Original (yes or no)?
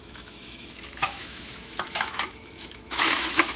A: no